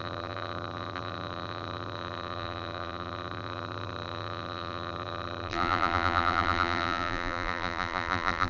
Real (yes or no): no